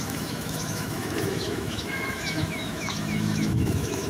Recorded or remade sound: remade